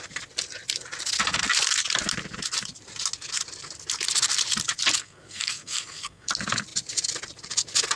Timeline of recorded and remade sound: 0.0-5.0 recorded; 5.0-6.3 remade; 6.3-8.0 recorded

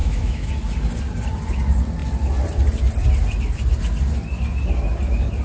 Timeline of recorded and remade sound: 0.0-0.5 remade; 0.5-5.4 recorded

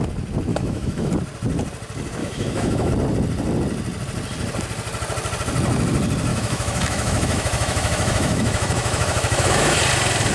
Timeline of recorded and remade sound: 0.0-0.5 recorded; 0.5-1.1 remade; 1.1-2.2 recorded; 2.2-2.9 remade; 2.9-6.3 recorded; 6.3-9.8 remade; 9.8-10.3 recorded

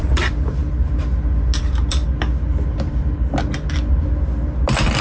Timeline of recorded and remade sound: 0.0-0.6 remade; 0.6-1.6 recorded; 1.6-2.0 remade; 2.0-5.0 recorded

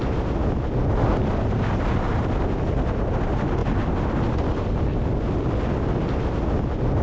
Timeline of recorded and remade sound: 0.0-7.0 recorded